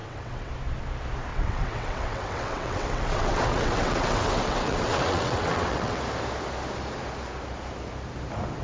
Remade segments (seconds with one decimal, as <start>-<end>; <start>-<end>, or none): 0.0-0.5; 1.3-6.0